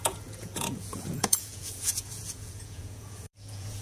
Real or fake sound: fake